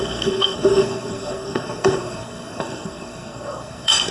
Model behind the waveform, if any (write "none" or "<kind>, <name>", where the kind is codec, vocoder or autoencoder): codec, SNAC